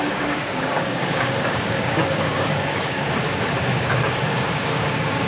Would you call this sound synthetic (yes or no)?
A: yes